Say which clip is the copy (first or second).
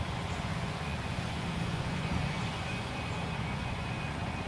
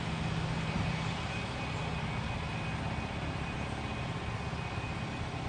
first